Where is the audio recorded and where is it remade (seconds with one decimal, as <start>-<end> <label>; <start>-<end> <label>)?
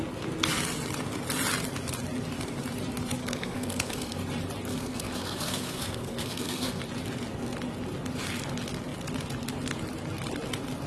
0.0-3.2 recorded; 3.2-4.2 remade; 4.2-4.7 recorded; 4.7-6.8 remade; 6.8-10.9 recorded